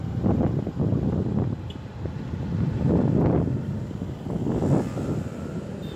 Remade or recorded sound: recorded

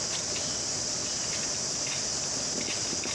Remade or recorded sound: recorded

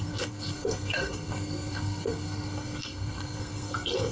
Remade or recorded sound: remade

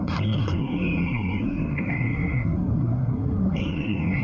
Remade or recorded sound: remade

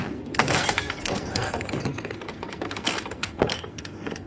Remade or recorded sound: remade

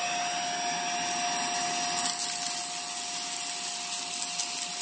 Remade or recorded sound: recorded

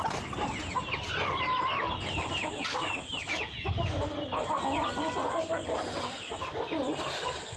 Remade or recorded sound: recorded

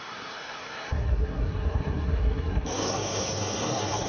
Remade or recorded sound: remade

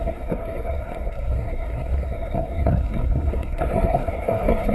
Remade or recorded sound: remade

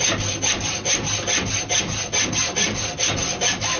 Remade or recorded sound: recorded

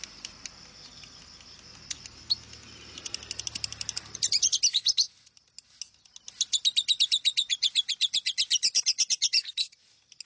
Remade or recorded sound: recorded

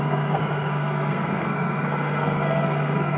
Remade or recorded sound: remade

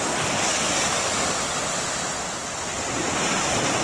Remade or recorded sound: recorded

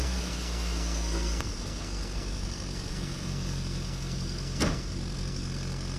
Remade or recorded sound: remade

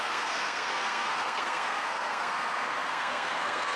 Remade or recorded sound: remade